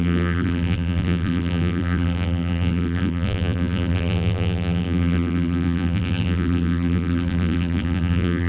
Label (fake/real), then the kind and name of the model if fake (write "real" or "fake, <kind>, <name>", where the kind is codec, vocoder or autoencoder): fake, vocoder, BigVGAN v2